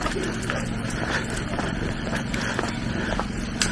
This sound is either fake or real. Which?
fake